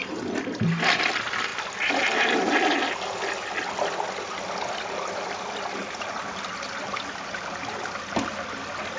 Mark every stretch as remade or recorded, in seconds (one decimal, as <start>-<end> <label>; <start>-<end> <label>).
0.0-9.0 recorded